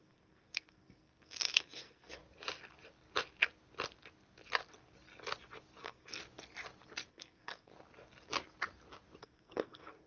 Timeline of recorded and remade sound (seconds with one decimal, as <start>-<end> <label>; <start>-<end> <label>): 0.0-2.2 remade; 2.2-5.8 recorded; 5.8-6.2 remade; 6.2-7.1 recorded; 7.1-7.7 remade; 7.7-9.2 recorded; 9.2-10.1 remade